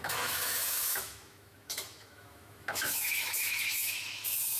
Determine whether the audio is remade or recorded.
remade